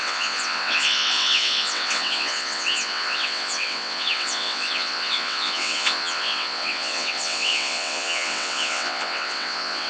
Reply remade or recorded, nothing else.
remade